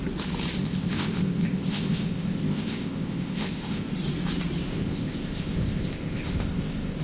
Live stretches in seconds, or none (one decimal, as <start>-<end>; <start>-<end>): 0.0-0.6; 3.9-4.7